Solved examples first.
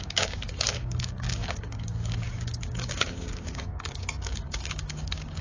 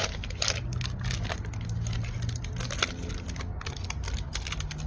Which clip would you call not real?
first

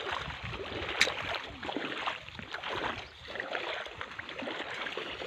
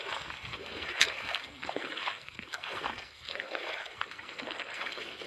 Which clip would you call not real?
second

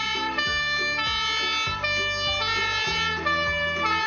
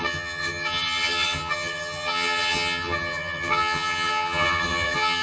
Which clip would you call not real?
second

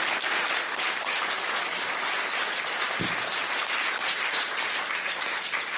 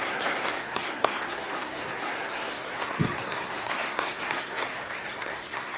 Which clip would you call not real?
second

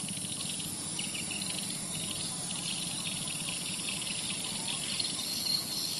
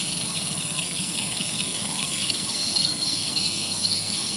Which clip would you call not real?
second